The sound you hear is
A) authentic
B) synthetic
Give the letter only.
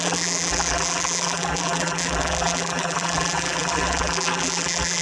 B